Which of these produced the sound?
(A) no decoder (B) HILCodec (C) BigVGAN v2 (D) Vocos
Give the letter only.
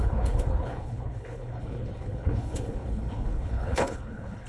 B